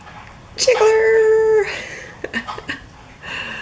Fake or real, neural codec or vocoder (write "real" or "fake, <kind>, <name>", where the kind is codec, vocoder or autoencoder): real